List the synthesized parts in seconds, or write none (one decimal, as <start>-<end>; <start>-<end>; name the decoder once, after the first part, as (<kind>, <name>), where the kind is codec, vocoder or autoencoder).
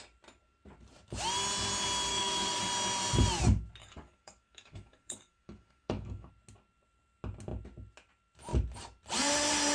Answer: 2.1-2.6 (codec, DAC); 3.8-6.3